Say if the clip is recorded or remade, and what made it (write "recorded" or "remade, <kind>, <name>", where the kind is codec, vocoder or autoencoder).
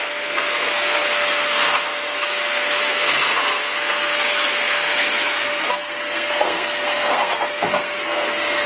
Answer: remade, codec, SNAC